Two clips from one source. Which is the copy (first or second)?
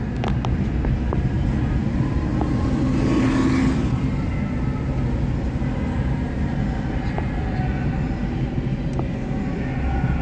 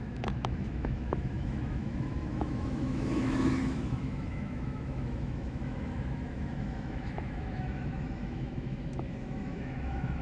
second